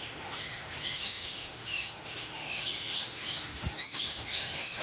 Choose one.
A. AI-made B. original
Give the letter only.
A